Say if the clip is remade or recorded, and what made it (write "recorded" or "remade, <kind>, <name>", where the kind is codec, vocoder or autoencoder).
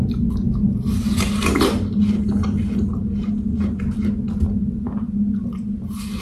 recorded